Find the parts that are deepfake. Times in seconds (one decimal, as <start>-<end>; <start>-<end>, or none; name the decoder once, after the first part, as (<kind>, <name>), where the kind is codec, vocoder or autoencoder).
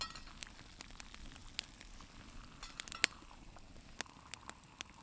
none